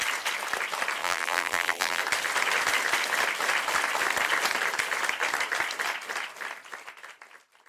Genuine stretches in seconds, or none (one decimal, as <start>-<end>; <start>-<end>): 0.0-1.0; 2.0-7.7